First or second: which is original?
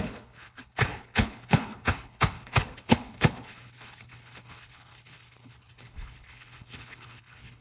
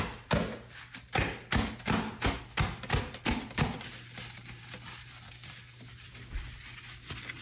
second